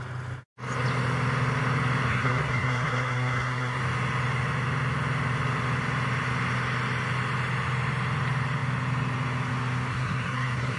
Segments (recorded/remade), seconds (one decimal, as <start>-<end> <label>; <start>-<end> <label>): 0.0-2.1 recorded; 2.1-3.8 remade; 3.8-9.9 recorded; 9.9-10.8 remade